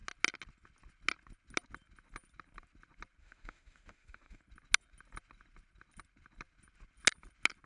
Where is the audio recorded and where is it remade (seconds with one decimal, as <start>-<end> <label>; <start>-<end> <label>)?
0.0-3.2 recorded; 3.2-4.4 remade; 4.4-7.7 recorded